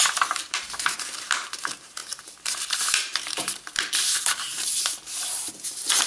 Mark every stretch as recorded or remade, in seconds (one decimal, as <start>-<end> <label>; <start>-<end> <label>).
0.0-6.1 remade